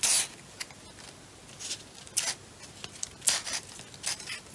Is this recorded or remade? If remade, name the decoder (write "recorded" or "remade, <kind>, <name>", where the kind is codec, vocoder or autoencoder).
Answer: recorded